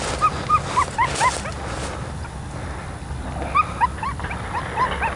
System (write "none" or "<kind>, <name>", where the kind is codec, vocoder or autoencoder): none